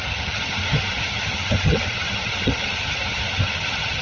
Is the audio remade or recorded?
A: remade